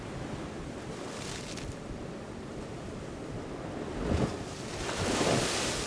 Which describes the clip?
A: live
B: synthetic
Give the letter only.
A